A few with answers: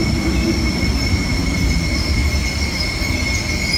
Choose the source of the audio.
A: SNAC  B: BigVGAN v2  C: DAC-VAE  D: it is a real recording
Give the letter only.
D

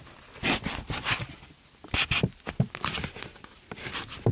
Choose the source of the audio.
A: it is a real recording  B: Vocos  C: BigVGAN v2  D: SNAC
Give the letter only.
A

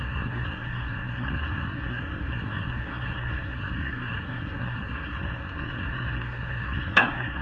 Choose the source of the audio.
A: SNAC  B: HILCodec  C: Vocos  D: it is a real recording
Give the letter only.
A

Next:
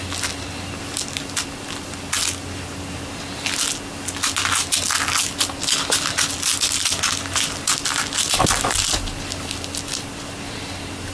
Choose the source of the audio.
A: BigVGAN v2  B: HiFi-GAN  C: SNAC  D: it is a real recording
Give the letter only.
D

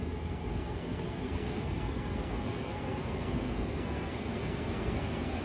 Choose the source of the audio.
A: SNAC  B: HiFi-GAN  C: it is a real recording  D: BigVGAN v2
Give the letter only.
A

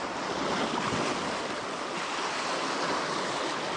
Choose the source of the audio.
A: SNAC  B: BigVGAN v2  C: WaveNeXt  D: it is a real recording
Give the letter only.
D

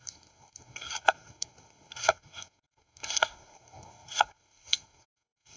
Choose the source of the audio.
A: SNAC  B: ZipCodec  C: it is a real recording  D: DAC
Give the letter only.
A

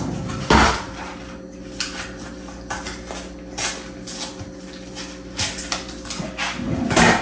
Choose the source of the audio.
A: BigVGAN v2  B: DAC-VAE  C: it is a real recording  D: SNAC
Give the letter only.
C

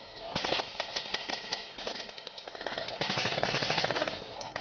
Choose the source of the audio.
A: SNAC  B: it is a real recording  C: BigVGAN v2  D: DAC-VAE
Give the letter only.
A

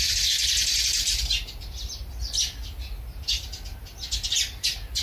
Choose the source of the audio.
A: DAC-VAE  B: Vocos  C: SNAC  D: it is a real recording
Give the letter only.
D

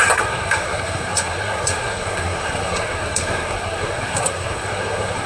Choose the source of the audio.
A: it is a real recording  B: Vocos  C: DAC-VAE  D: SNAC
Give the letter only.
D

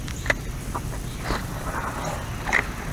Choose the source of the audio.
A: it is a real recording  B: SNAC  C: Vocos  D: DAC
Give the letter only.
A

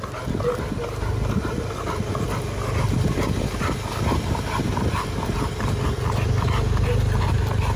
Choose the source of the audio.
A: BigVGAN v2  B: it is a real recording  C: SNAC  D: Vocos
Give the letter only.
B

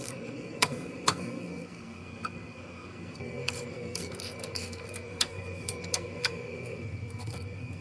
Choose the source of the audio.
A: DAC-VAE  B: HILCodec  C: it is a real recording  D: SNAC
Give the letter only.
D